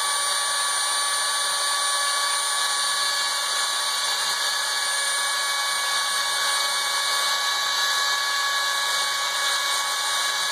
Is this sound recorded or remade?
recorded